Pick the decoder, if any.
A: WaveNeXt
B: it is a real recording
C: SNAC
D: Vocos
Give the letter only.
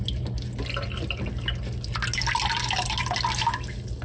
B